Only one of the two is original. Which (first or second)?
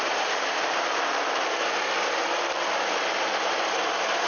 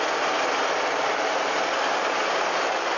second